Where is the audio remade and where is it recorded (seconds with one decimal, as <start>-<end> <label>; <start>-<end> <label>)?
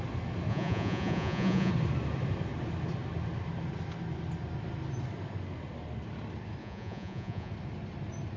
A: 0.0-0.5 recorded; 0.5-1.7 remade; 1.7-6.6 recorded; 6.6-7.5 remade; 7.5-8.4 recorded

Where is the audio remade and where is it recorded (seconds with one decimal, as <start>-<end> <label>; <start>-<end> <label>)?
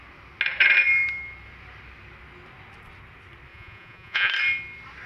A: 0.0-3.5 recorded; 3.5-4.3 remade; 4.3-5.1 recorded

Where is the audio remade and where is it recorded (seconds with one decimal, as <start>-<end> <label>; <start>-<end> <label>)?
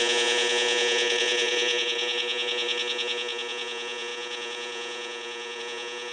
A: 0.0-6.1 remade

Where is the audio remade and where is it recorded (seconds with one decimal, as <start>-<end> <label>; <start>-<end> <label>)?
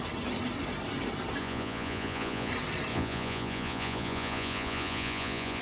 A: 0.0-1.4 recorded; 1.4-2.5 remade; 2.5-2.9 recorded; 2.9-5.6 remade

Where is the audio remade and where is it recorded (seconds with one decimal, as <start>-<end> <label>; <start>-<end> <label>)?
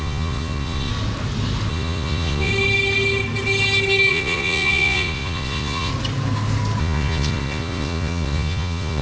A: 0.0-0.9 remade; 0.9-1.7 recorded; 1.7-2.5 remade; 2.5-4.1 recorded; 4.1-5.9 remade; 5.9-6.8 recorded; 6.8-9.0 remade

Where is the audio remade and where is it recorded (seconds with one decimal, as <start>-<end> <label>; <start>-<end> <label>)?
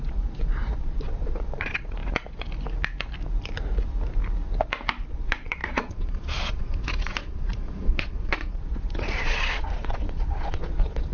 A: 0.0-2.0 remade; 2.0-5.1 recorded; 5.1-11.1 remade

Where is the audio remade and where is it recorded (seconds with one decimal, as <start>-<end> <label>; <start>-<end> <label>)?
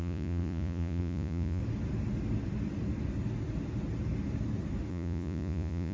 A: 0.0-1.6 remade; 1.6-4.9 recorded; 4.9-5.9 remade